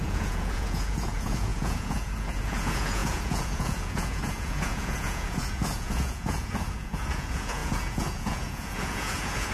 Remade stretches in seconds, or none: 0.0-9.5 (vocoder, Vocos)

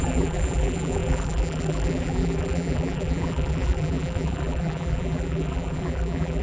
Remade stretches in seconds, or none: 0.0-6.4 (vocoder, BigVGAN v2)

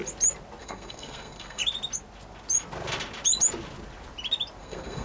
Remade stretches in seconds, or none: 0.6-1.6 (codec, SNAC); 4.6-5.0